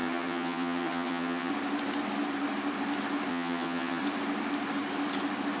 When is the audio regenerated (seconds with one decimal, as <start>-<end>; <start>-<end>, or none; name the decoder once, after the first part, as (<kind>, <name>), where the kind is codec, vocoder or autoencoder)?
0.0-1.5 (vocoder, HiFi-GAN); 3.3-4.0